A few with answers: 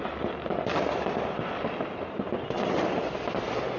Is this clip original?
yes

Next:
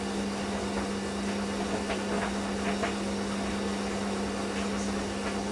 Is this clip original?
yes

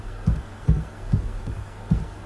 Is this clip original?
no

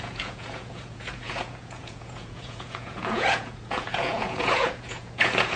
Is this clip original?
no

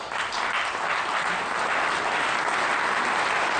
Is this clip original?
yes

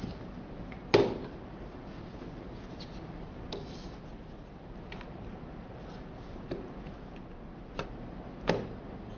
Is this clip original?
yes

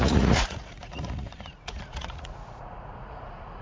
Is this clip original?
no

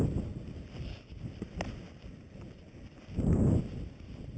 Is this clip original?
yes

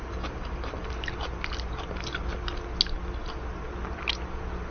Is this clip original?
yes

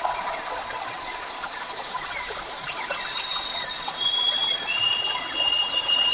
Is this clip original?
no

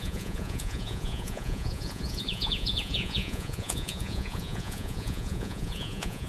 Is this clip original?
no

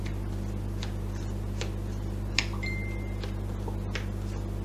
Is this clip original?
yes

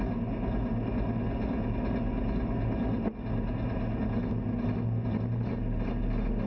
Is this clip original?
yes